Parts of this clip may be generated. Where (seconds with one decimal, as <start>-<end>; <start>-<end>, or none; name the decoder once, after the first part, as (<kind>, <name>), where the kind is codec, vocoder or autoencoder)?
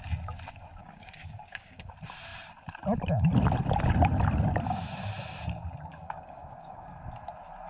0.8-1.9 (codec, DAC); 5.9-7.0